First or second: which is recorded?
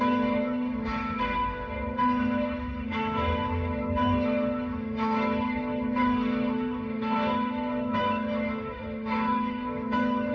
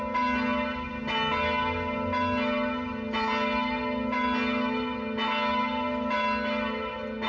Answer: second